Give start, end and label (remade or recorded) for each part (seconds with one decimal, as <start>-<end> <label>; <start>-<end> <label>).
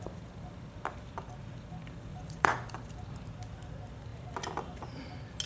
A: 0.0-2.1 recorded; 2.1-2.7 remade; 2.7-5.5 recorded